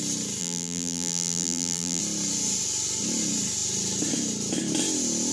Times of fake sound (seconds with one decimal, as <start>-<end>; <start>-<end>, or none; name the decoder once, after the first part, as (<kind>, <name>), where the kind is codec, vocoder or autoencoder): 0.4-2.0 (vocoder, BigVGAN v2)